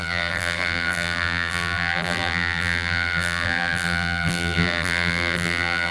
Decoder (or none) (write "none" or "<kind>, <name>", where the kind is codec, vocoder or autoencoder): vocoder, BigVGAN v2